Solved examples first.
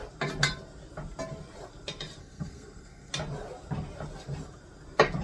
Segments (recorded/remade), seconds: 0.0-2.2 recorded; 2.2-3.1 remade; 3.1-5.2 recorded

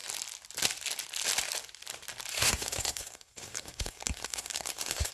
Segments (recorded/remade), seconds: 0.0-2.3 recorded; 2.3-5.1 remade

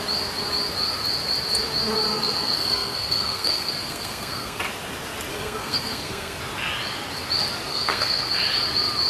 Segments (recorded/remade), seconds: 0.0-2.1 recorded; 2.1-4.6 remade; 4.6-5.3 recorded; 5.3-6.4 remade; 6.4-7.7 recorded; 7.7-8.3 remade; 8.3-9.1 recorded

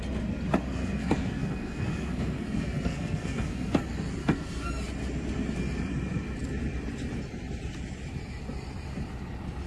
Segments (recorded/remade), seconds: 0.0-0.7 recorded; 0.7-3.8 remade; 3.8-4.2 recorded; 4.2-4.7 remade; 4.7-9.7 recorded

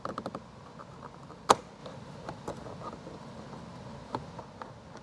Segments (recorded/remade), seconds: 0.0-5.0 recorded